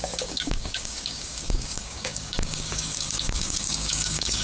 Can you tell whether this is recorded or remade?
remade